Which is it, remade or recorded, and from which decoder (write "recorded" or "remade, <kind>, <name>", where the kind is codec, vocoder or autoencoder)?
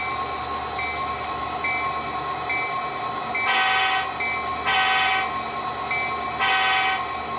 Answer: recorded